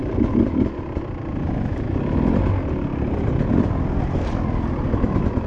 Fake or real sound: real